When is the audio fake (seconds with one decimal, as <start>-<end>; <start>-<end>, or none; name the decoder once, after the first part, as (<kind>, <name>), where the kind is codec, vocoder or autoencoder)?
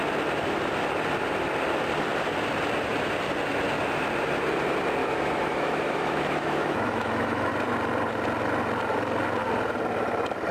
5.0-7.5 (autoencoder, DAC-VAE)